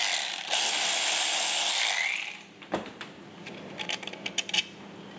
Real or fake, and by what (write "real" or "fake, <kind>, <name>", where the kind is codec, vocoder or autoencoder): real